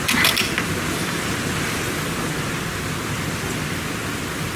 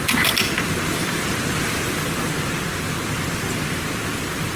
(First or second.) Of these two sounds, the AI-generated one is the second